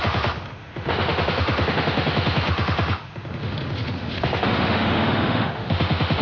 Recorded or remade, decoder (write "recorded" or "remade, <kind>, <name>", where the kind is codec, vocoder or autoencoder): remade, autoencoder, DAC-VAE